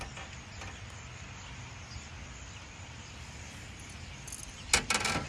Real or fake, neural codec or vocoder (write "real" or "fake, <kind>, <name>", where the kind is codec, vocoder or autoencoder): real